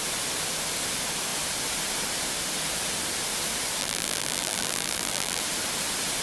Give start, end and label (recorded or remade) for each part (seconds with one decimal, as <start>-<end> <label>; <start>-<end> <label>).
0.0-3.8 recorded; 3.8-5.4 remade; 5.4-6.2 recorded